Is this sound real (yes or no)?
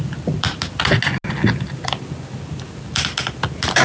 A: yes